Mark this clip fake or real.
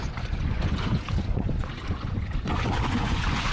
fake